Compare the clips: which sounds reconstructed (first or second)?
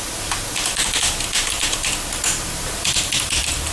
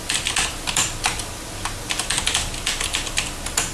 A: first